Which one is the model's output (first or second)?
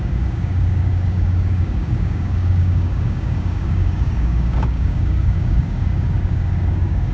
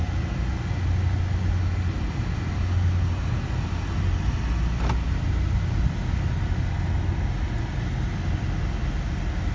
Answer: first